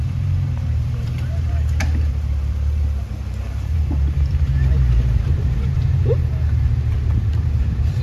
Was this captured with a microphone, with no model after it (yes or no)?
no